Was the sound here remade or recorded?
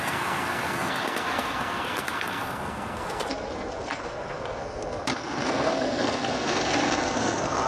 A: remade